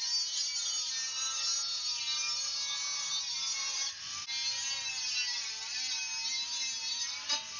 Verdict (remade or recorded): recorded